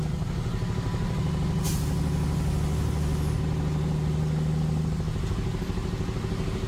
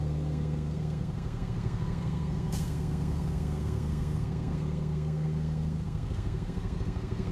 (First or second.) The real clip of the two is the first